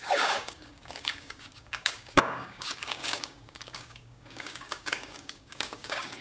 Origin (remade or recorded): remade